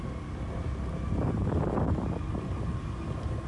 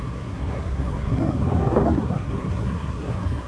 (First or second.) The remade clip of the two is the second